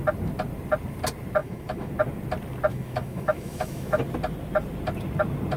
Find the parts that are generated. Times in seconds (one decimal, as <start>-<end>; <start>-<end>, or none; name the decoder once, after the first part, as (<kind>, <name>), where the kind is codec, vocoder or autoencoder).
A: 1.4-1.9 (autoencoder, DAC-VAE); 2.7-4.0